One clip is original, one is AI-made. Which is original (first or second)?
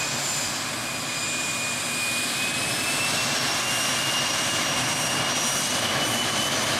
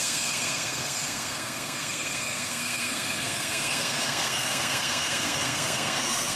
first